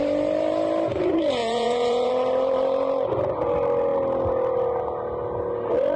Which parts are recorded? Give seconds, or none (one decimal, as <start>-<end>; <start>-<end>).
0.0-1.4; 2.1-6.0